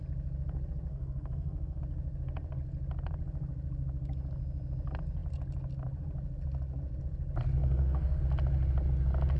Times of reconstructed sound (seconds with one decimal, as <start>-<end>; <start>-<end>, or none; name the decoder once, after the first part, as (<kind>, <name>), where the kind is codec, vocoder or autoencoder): 0.9-1.8 (codec, SNAC); 7.6-8.2